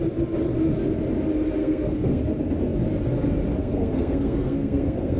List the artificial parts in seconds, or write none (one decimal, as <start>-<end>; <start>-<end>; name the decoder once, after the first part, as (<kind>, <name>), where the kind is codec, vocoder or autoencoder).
1.6-2.2 (codec, SNAC); 3.6-5.2